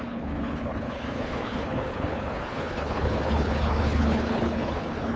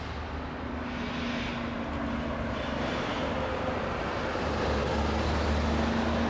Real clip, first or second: second